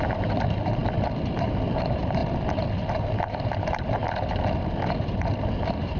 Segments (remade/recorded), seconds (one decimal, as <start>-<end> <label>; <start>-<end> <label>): 0.0-0.8 remade; 0.8-1.4 recorded; 1.4-2.2 remade; 2.2-2.9 recorded; 2.9-4.0 remade; 4.0-5.0 recorded; 5.0-6.0 remade